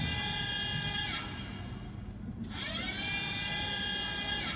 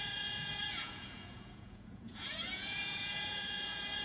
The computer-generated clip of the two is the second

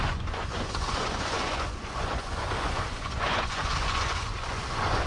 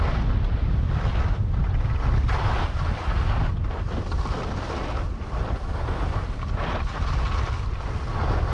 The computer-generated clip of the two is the first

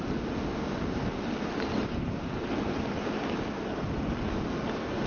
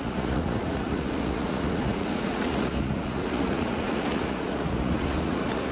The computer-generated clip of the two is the second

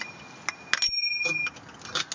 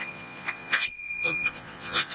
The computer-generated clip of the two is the second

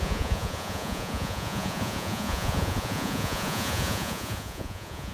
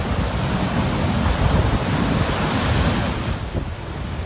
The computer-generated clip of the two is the first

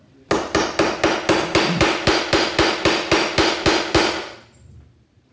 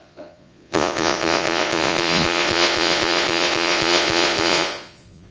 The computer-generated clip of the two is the second